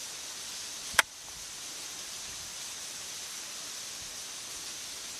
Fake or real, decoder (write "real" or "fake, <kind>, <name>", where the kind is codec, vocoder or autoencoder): real